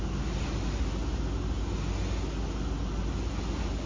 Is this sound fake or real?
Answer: real